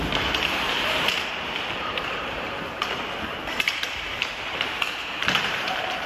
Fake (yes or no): yes